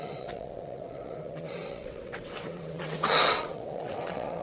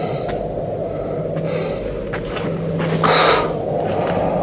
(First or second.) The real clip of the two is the second